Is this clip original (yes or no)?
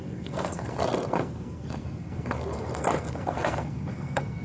no